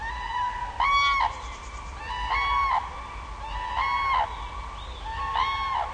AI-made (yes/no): no